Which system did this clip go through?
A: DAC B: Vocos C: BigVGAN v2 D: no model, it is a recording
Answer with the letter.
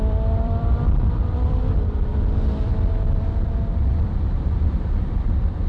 C